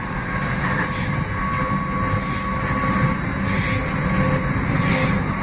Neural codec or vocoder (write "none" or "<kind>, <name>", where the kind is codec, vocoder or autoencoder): none